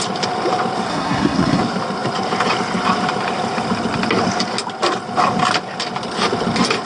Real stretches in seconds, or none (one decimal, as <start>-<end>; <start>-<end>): 0.0-0.9; 1.6-6.9